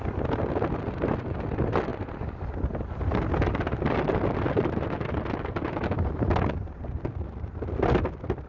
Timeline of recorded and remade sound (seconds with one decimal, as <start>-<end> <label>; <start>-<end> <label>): 0.0-8.5 recorded